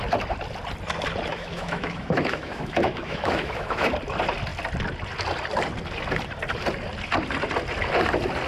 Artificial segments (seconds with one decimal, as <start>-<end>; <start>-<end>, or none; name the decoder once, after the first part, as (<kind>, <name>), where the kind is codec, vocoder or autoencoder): 1.3-3.9 (autoencoder, DAC-VAE)